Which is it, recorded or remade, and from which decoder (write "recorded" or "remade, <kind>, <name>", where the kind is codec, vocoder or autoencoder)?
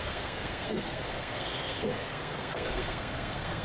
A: remade, codec, SNAC